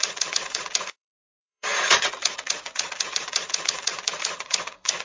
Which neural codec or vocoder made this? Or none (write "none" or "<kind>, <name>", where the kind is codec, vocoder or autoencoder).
vocoder, Vocos